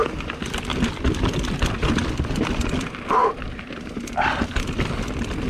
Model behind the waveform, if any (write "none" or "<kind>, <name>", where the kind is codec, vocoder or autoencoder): none